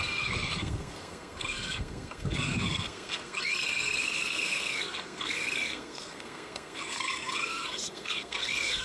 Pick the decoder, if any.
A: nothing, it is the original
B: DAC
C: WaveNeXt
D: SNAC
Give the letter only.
D